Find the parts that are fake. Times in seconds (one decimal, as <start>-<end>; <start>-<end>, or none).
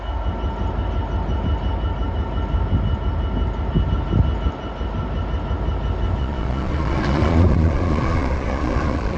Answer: 6.2-9.2